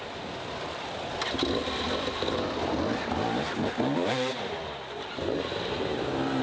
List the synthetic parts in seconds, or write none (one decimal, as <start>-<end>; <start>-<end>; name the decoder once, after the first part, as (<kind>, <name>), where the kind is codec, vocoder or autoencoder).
none